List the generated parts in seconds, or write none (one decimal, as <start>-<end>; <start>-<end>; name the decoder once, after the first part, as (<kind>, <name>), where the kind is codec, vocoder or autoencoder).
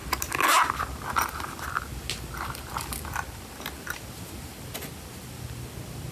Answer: none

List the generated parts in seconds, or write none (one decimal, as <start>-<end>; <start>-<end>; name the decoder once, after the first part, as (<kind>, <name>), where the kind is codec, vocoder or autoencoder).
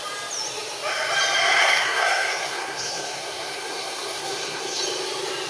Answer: 1.6-4.8 (codec, SNAC)